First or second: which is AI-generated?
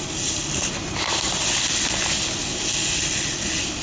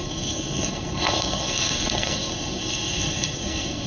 second